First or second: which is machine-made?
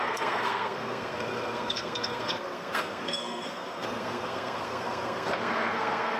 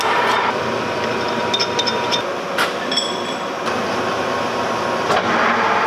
first